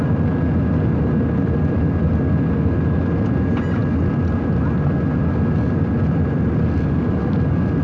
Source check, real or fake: real